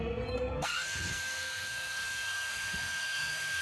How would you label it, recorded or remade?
remade